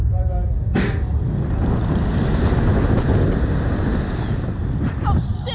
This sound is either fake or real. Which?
real